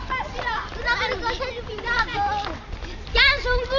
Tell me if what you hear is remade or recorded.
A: recorded